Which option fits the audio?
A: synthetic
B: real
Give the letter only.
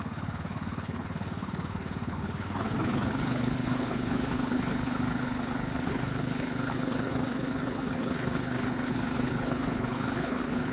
A